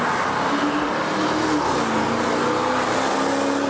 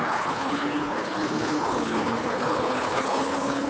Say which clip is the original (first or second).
first